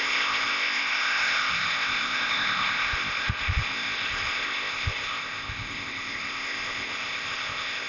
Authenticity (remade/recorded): remade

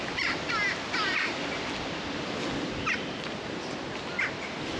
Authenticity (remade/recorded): recorded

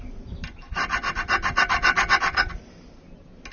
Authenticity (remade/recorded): recorded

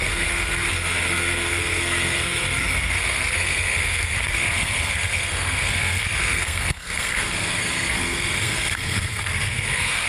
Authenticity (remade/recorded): remade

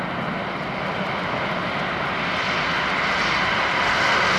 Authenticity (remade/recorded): recorded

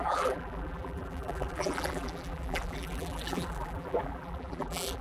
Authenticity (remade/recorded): remade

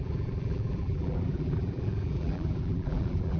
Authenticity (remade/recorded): remade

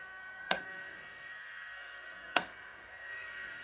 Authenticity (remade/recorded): remade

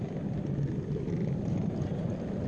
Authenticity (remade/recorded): remade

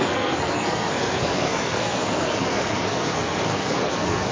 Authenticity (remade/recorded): remade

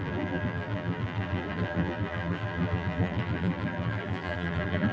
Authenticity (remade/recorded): remade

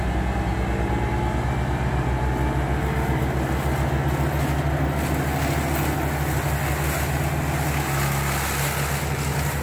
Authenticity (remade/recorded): recorded